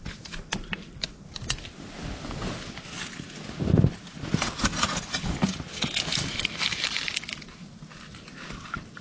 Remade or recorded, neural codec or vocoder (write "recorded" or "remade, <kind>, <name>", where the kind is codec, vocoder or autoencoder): recorded